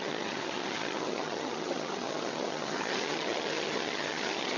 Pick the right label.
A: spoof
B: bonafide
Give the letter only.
A